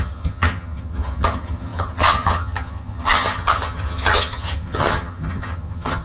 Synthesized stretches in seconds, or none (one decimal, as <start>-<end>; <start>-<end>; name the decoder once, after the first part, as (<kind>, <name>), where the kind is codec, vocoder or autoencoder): 0.0-6.0 (vocoder, HiFi-GAN)